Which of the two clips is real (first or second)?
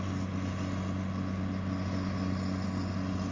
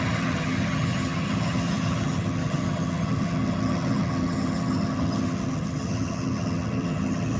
first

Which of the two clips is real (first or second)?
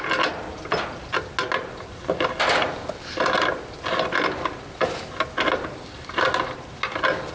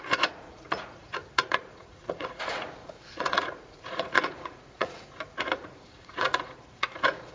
first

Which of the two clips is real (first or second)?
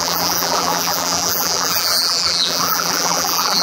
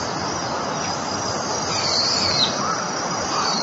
second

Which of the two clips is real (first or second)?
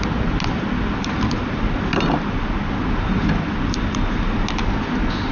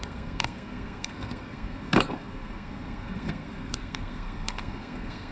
first